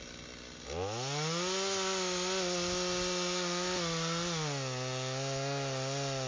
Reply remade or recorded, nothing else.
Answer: recorded